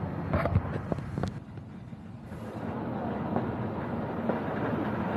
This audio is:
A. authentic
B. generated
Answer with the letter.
A